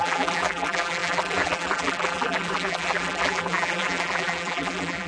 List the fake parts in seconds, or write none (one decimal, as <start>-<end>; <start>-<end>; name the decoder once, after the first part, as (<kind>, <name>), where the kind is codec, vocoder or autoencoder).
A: 0.0-5.1 (vocoder, BigVGAN v2)